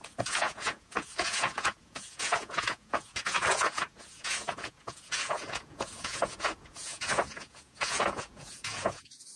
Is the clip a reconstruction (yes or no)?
yes